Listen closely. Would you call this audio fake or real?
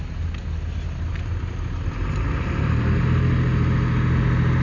real